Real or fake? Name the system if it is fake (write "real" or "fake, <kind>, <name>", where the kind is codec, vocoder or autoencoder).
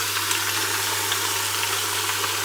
real